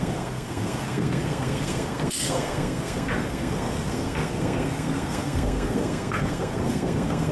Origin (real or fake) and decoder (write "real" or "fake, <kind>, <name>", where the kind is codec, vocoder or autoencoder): fake, codec, SNAC